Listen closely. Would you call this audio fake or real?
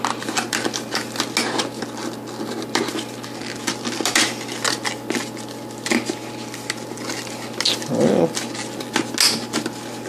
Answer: real